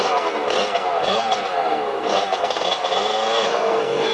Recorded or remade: remade